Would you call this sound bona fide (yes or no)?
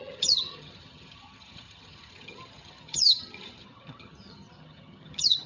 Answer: no